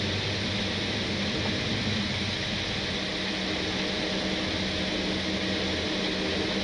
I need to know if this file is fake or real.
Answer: real